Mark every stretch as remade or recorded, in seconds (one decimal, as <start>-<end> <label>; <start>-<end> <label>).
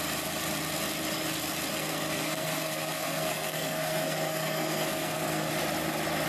0.0-1.7 recorded; 1.7-5.5 remade; 5.5-6.3 recorded